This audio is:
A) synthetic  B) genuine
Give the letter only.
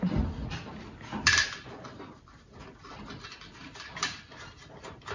B